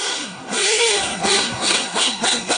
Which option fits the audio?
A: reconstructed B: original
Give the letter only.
A